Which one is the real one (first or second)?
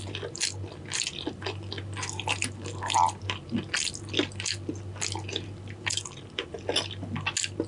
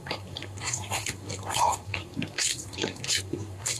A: first